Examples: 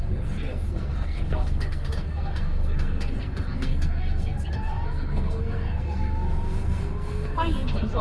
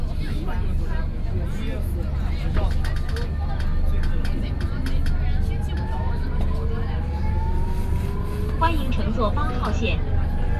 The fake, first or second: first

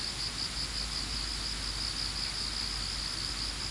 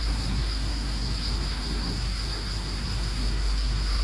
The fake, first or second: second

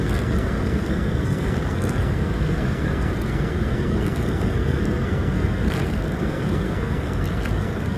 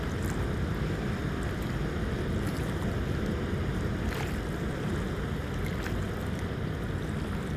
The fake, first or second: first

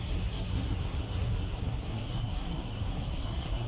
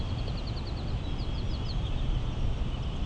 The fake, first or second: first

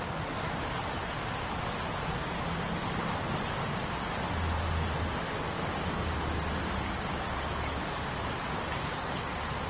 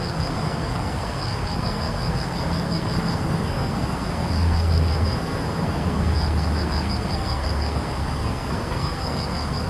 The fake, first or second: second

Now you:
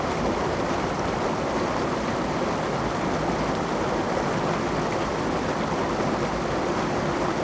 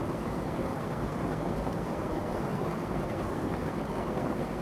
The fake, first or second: second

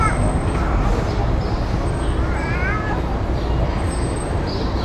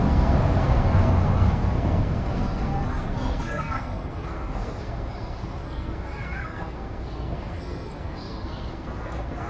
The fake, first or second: second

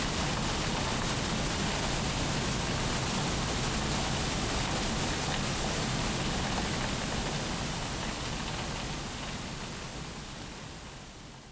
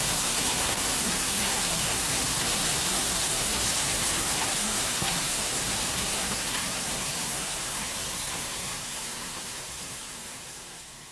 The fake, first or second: second